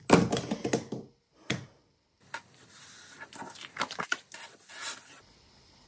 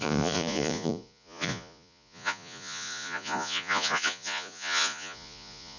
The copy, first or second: second